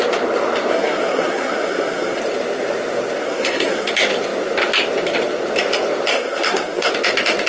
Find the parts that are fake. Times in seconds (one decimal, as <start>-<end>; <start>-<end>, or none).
0.7-2.2; 3.2-3.9; 6.1-6.9